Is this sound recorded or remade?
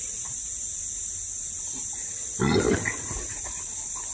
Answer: recorded